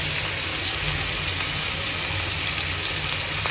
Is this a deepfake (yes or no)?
no